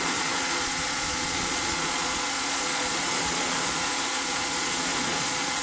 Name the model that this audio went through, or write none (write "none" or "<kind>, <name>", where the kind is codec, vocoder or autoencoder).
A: vocoder, Vocos